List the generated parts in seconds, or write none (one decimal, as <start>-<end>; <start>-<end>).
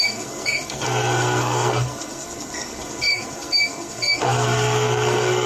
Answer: 0.0-5.5